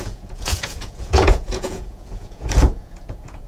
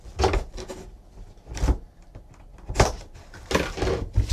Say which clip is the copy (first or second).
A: first